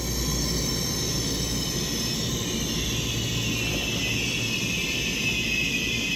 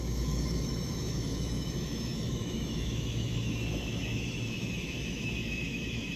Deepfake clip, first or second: second